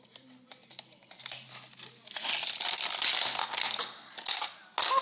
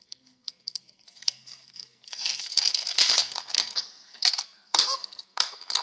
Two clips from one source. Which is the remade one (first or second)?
second